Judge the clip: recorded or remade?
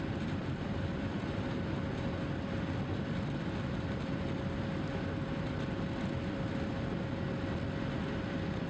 remade